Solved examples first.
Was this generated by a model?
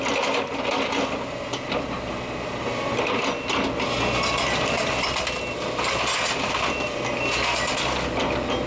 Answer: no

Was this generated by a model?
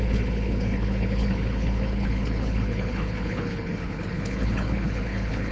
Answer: yes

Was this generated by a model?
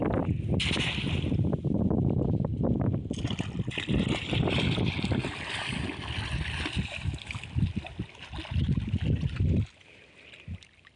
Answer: no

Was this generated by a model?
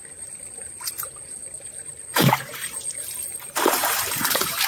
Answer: yes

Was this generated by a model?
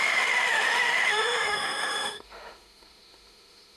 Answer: yes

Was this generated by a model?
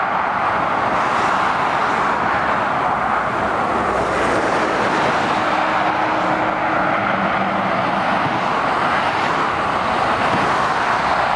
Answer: no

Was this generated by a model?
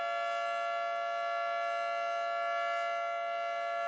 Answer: no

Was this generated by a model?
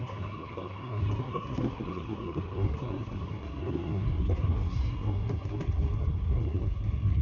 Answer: yes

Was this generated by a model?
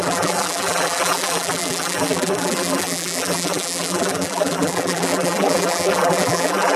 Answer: yes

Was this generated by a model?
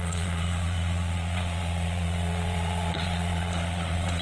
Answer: yes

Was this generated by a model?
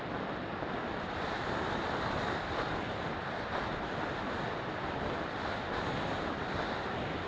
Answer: no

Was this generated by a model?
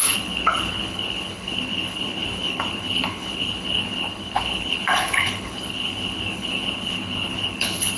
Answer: yes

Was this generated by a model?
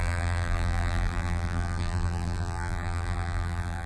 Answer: yes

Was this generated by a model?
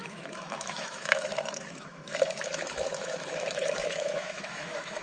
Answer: yes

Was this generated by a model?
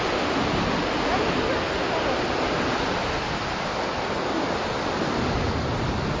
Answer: no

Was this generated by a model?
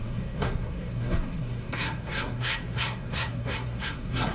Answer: yes